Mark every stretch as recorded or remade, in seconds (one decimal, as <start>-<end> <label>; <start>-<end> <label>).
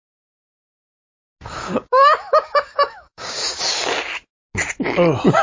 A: 0.0-1.6 recorded; 1.6-3.7 remade; 3.7-5.4 recorded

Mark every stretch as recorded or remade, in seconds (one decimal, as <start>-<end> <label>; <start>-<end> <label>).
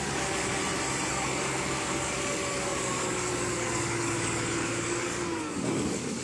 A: 0.0-0.6 remade; 0.6-1.1 recorded; 1.1-6.2 remade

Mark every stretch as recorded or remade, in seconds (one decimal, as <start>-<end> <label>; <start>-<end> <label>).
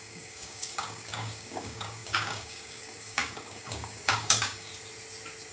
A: 0.0-4.7 remade; 4.7-5.5 recorded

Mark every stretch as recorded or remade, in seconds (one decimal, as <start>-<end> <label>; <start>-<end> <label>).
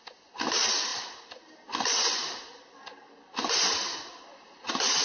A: 0.0-5.0 recorded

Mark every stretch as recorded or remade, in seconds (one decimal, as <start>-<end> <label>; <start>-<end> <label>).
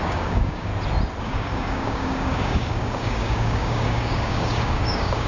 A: 0.0-0.7 remade; 0.7-1.2 recorded; 1.2-5.3 remade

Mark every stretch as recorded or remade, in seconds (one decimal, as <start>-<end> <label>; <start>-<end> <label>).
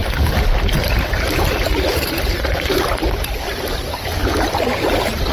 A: 0.0-5.3 recorded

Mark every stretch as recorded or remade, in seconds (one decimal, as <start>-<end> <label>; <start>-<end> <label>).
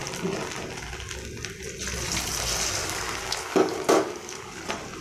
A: 0.0-2.8 recorded; 2.8-4.6 remade; 4.6-5.0 recorded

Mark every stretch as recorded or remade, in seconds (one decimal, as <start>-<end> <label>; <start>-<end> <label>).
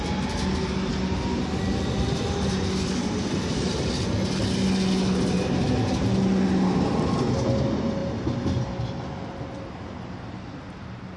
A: 0.0-11.2 recorded